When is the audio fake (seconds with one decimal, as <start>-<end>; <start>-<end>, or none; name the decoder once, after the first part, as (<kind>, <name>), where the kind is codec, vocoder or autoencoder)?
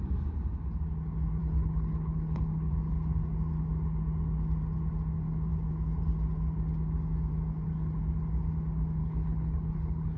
1.4-2.7 (codec, HILCodec); 9.0-10.2